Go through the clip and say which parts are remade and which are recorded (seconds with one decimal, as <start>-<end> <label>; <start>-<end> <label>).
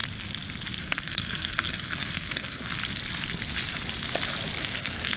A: 0.0-0.8 recorded; 0.8-2.7 remade; 2.7-4.6 recorded; 4.6-5.2 remade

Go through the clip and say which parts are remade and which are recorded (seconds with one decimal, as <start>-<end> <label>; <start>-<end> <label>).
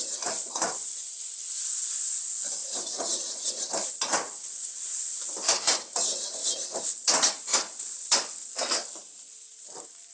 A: 0.0-2.6 recorded; 2.6-3.5 remade; 3.5-10.1 recorded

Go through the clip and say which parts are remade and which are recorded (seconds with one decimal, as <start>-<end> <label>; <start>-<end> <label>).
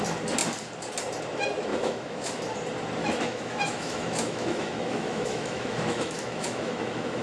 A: 0.0-1.7 recorded; 1.7-2.4 remade; 2.4-3.0 recorded; 3.0-7.2 remade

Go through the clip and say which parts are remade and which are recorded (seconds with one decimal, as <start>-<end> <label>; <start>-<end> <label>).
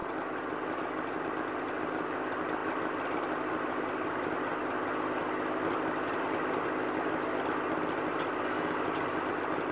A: 0.0-9.7 recorded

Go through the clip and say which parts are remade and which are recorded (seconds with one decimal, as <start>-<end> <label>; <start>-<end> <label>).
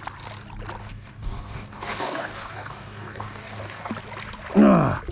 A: 0.0-0.8 recorded; 0.8-3.9 remade; 3.9-5.1 recorded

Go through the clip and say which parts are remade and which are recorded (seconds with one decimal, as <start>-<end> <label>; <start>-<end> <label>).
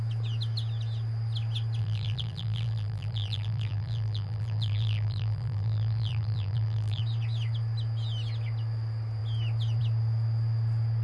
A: 0.0-1.8 recorded; 1.8-7.0 remade; 7.0-11.0 recorded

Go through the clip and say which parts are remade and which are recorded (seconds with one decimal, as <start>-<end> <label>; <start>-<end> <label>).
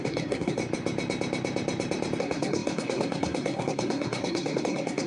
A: 0.0-0.6 remade; 0.6-2.2 recorded; 2.2-5.1 remade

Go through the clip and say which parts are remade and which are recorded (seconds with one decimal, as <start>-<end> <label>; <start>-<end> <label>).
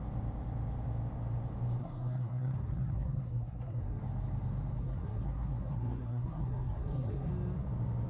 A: 0.0-1.8 recorded; 1.8-4.0 remade; 4.0-4.8 recorded; 4.8-7.3 remade; 7.3-8.1 recorded